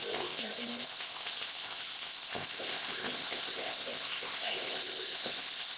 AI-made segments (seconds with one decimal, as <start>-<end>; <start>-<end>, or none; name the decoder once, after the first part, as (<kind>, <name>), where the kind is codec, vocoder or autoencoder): 0.0-5.8 (codec, ZipCodec)